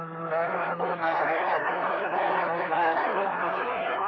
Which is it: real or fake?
fake